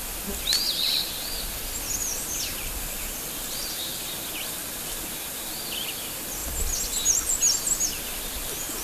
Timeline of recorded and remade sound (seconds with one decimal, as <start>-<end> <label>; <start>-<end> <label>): 0.0-2.0 recorded; 2.0-4.1 remade; 4.1-8.8 recorded